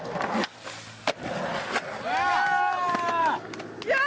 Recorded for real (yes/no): yes